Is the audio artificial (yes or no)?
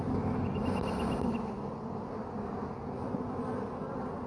no